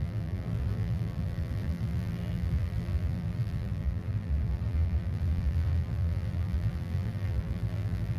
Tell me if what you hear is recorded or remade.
remade